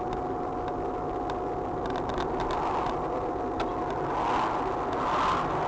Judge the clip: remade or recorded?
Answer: recorded